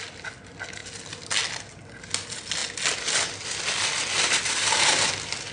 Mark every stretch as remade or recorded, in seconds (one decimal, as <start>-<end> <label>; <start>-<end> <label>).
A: 0.0-5.5 recorded